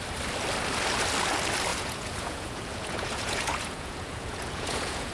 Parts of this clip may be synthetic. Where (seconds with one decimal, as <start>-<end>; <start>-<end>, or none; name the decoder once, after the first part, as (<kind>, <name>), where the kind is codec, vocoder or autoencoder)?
1.7-5.1 (vocoder, Vocos)